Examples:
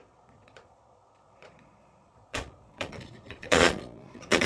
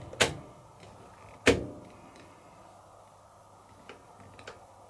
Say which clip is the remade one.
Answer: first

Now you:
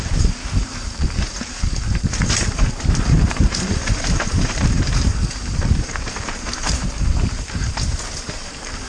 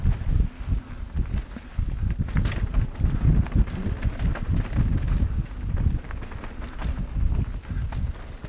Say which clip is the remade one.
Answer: first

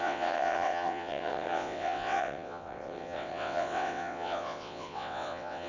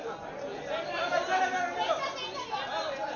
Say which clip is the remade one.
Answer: first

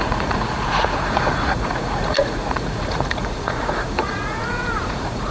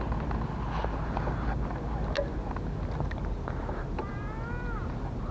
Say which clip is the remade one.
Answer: first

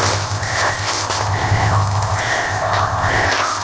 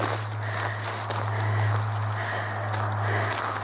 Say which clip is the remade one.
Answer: first